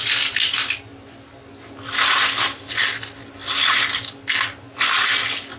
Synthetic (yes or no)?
no